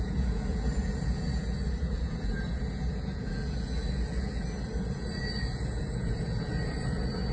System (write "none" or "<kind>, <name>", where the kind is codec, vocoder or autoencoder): vocoder, Vocos